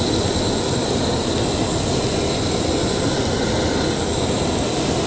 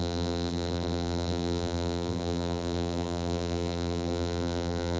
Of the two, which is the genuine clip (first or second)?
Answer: first